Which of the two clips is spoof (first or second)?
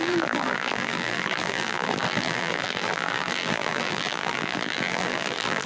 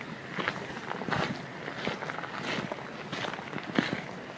first